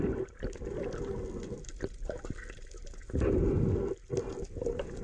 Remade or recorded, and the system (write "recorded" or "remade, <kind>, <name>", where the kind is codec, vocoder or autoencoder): recorded